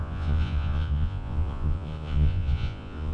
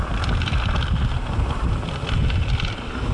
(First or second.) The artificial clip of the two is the first